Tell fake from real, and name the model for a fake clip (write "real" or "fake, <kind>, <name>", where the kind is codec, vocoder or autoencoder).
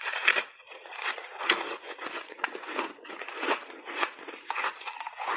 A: fake, vocoder, Vocos